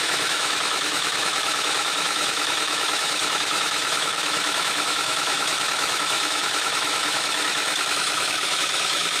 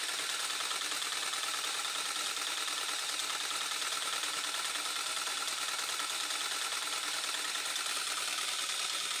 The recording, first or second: second